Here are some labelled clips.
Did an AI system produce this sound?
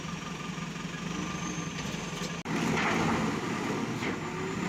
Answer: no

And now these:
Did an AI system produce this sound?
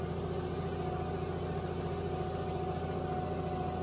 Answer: no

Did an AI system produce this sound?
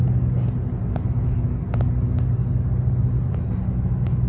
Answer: no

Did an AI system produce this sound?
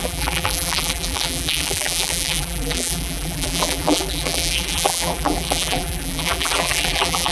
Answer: yes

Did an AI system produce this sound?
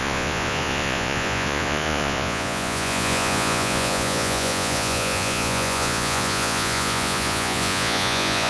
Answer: yes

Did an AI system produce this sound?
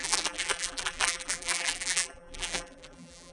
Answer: yes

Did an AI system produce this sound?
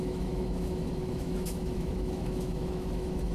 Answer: yes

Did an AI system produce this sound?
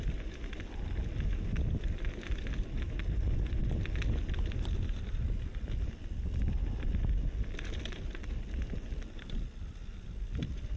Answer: no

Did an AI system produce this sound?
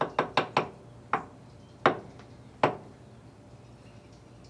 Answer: no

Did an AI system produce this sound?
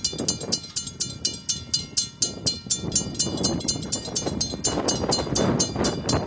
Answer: no